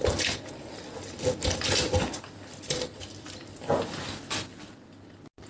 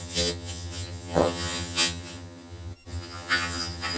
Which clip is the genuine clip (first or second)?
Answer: first